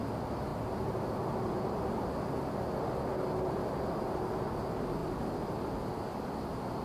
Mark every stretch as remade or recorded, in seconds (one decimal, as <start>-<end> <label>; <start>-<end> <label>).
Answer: 0.0-6.8 recorded